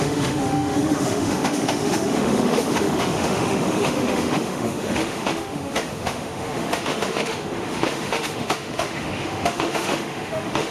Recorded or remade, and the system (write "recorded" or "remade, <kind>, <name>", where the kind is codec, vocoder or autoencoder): remade, autoencoder, DAC-VAE